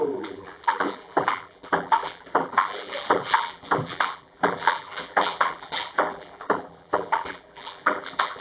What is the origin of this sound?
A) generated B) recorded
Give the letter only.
A